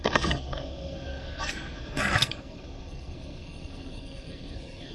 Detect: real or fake fake